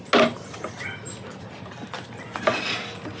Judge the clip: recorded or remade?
recorded